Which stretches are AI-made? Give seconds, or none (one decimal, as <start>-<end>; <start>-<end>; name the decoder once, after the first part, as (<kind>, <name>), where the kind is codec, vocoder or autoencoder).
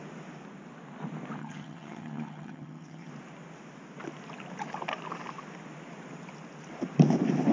1.4-3.1 (vocoder, HiFi-GAN)